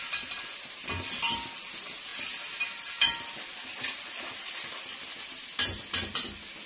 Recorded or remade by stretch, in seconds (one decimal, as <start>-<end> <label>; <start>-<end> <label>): 0.0-6.7 recorded